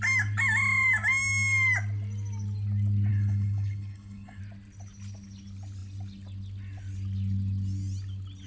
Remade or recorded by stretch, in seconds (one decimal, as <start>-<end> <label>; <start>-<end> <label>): 0.0-3.1 recorded; 3.1-4.4 remade; 4.4-8.5 recorded